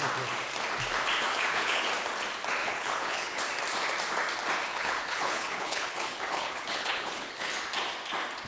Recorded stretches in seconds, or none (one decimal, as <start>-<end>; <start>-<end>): 0.0-1.3; 1.9-2.6; 3.4-4.7; 7.5-8.5